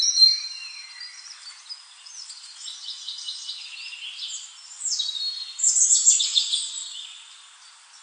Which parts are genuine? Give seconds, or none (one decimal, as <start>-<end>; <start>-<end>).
0.0-2.1; 4.9-8.0